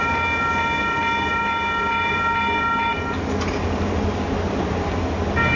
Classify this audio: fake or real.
real